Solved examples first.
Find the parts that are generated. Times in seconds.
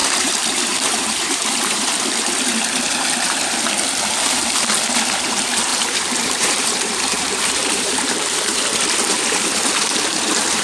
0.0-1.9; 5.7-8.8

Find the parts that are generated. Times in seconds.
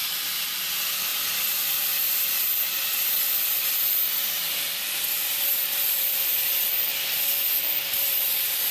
0.7-8.7